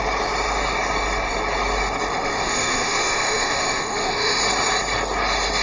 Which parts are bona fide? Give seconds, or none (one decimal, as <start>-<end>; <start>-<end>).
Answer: 0.0-2.1; 4.4-5.6